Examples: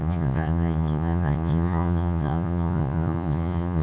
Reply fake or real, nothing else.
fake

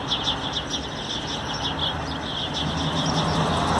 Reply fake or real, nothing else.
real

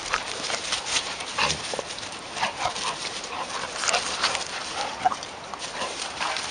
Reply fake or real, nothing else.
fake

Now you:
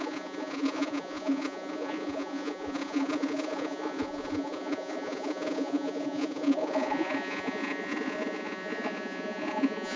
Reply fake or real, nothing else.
fake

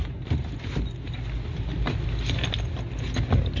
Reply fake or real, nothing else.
real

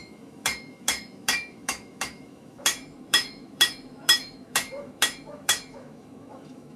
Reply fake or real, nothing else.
fake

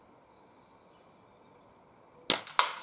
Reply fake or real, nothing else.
real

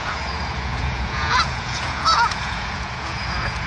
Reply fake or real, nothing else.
fake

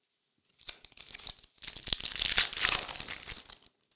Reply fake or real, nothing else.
real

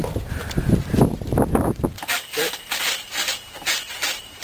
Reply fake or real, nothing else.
fake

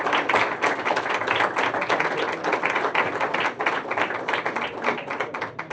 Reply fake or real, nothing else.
real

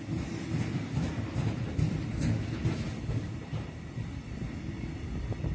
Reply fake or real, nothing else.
real